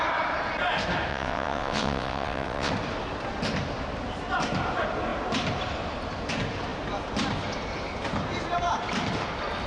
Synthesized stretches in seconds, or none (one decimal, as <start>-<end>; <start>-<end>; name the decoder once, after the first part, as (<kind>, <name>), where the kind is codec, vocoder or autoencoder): 1.1-2.7 (vocoder, WaveNeXt)